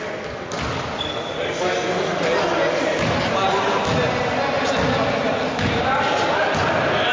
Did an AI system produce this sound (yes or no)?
no